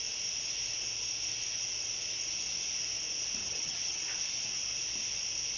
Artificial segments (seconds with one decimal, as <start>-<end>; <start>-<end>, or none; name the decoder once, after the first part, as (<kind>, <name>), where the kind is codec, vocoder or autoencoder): 3.4-4.0 (vocoder, HiFi-GAN)